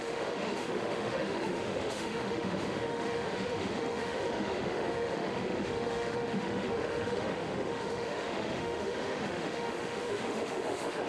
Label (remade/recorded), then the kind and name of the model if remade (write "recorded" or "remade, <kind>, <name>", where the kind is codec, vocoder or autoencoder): remade, autoencoder, DAC-VAE